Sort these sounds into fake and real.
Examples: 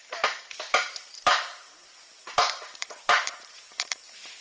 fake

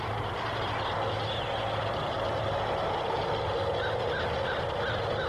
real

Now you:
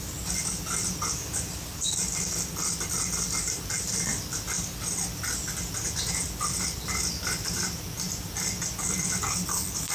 real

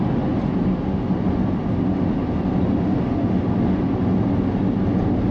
real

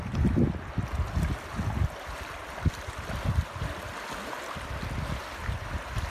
real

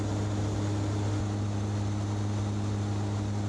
fake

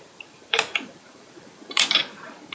fake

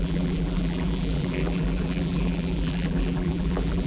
fake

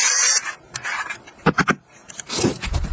fake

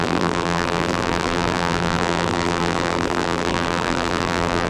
fake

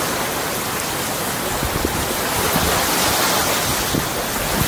real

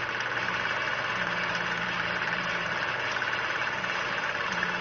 fake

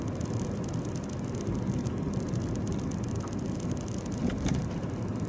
real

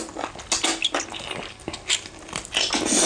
real